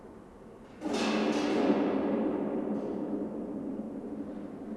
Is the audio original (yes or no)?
yes